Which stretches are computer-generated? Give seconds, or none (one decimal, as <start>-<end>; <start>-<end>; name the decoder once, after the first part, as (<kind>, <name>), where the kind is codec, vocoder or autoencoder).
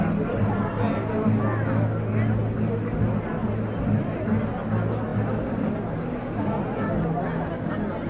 none